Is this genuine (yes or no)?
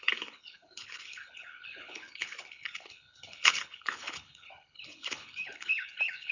no